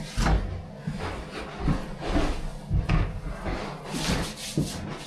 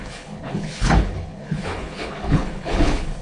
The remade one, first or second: second